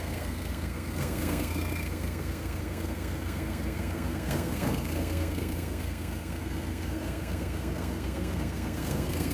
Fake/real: fake